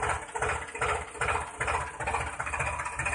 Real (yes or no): yes